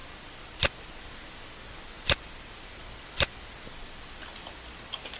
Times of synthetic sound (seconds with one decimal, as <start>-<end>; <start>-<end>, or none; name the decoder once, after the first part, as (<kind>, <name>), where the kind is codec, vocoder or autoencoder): none